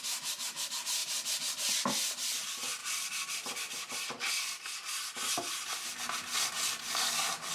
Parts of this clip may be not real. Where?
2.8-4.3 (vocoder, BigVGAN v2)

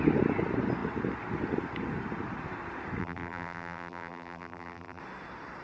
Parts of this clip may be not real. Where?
3.0-5.0 (vocoder, BigVGAN v2)